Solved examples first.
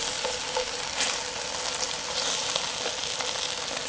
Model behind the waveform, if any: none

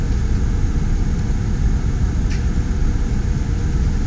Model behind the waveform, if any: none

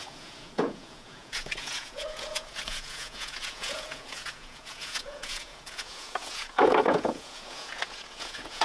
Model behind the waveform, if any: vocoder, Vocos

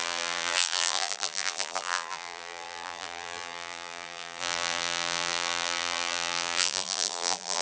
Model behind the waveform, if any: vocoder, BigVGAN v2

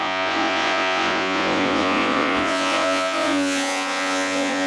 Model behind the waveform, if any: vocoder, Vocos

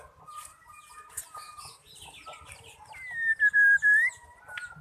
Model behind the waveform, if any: none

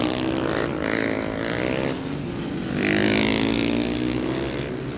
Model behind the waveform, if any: none